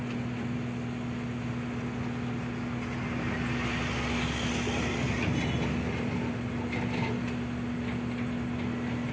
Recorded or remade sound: recorded